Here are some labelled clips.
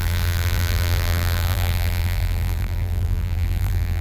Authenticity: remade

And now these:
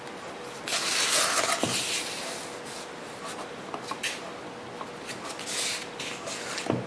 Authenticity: recorded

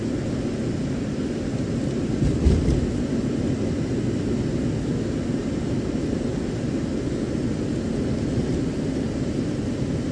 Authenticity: recorded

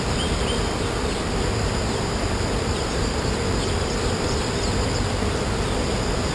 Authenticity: remade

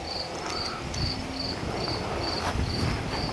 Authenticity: recorded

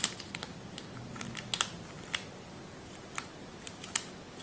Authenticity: recorded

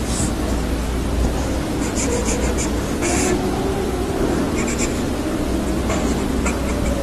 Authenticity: remade